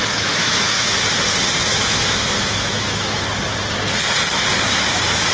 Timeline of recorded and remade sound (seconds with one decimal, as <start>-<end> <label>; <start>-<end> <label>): 0.0-0.9 remade; 0.9-1.6 recorded; 1.6-3.2 remade; 3.2-5.3 recorded